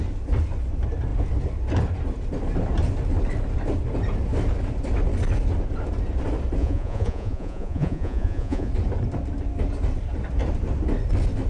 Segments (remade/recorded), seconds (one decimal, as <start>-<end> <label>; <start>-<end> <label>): 0.0-6.6 recorded; 6.6-8.7 remade; 8.7-11.5 recorded